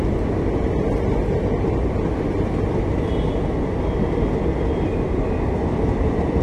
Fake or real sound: real